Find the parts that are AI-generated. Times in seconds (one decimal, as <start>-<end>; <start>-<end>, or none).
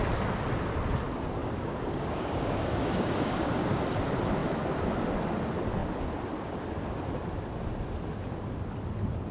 1.4-3.8